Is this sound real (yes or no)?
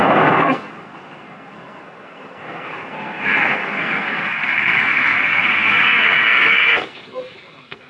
no